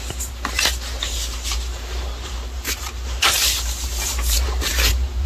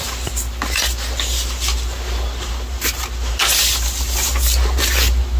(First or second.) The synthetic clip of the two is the first